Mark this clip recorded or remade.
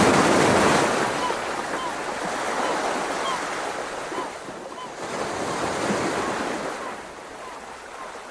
recorded